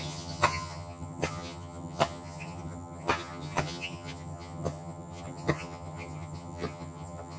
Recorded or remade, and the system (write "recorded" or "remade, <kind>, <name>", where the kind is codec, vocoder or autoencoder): remade, vocoder, HiFi-GAN